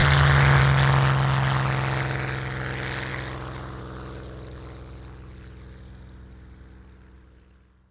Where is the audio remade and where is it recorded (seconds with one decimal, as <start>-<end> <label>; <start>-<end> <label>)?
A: 0.0-3.1 recorded; 3.1-3.8 remade; 3.8-7.9 recorded